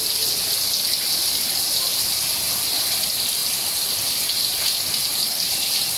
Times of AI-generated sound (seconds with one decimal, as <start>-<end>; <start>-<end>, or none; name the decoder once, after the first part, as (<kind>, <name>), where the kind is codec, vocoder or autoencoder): none